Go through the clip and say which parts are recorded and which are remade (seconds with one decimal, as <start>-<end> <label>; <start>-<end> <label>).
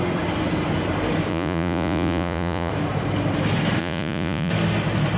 0.0-1.3 recorded; 1.3-2.7 remade; 2.7-3.8 recorded; 3.8-4.5 remade; 4.5-5.2 recorded